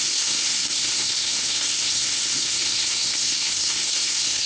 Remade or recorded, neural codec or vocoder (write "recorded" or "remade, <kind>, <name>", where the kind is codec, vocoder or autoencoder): remade, codec, SNAC